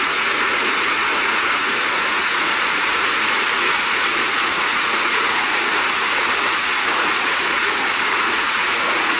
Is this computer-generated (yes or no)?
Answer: yes